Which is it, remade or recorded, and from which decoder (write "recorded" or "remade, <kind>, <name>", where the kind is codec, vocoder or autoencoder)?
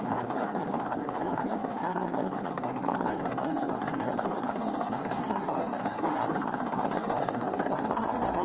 remade, codec, SNAC